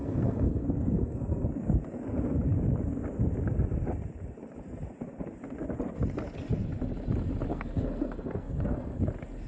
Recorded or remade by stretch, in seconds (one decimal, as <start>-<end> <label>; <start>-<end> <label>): 0.0-1.8 remade; 1.8-7.5 recorded; 7.5-9.0 remade; 9.0-9.5 recorded